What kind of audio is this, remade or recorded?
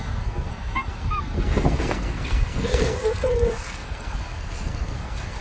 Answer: remade